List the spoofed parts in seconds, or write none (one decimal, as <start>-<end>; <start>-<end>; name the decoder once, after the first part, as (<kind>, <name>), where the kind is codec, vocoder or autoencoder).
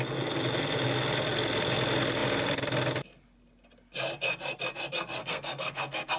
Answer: 5.2-6.2 (codec, SNAC)